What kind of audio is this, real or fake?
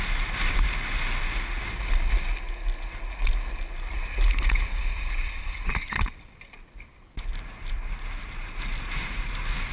real